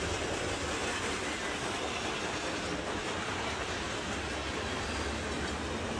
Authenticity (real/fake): real